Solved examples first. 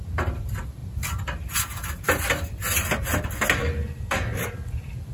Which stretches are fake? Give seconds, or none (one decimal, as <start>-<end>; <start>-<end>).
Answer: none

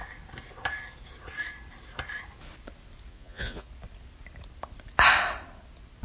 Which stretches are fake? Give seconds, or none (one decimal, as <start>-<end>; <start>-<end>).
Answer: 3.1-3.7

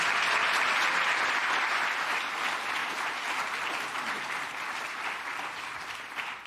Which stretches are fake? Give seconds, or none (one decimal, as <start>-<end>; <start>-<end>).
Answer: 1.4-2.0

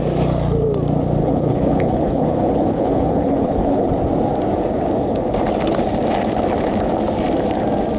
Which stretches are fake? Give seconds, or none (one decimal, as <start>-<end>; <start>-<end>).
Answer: 1.2-3.9

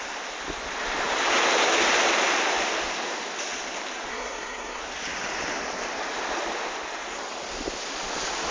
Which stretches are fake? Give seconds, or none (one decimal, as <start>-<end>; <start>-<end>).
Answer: 4.1-4.8